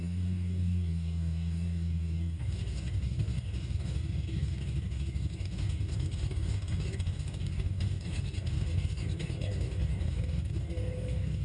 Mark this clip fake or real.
fake